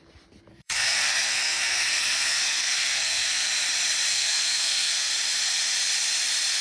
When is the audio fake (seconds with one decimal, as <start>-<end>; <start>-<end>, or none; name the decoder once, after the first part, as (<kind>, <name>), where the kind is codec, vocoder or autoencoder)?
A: 0.5-3.5 (codec, SNAC); 4.1-5.1